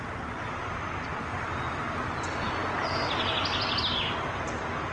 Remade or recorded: recorded